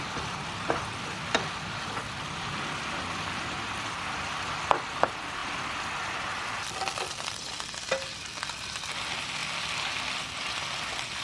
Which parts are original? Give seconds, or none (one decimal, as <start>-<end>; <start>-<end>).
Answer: 0.0-11.2